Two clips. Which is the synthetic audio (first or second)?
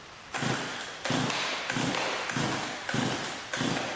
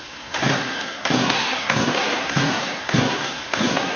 second